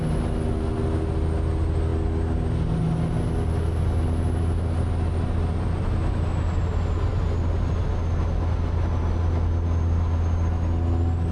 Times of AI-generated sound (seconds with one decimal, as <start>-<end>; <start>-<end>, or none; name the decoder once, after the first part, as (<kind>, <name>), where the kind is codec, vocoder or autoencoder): none